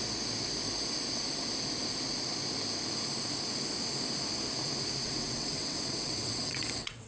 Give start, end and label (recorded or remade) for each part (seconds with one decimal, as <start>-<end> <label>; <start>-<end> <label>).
0.0-5.0 recorded; 5.0-7.1 remade